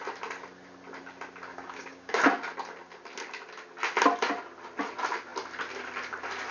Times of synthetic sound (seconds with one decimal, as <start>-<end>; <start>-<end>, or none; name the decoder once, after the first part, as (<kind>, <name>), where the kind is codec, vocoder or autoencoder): 1.5-2.2 (codec, DAC)